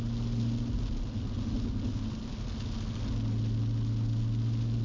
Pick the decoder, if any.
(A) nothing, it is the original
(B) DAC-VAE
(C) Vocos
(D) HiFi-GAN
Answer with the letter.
A